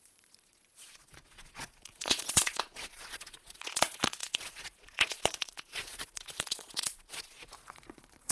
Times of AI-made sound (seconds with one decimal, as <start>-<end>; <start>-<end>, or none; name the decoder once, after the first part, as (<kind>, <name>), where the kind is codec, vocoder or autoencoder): 0.0-8.3 (vocoder, Vocos)